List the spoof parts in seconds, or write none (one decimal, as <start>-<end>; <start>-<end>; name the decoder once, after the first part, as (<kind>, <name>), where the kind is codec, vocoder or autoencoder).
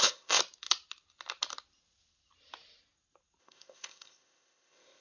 0.0-0.4 (codec, ZipCodec); 3.4-5.0